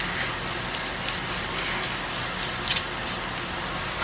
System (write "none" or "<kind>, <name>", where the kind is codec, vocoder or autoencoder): none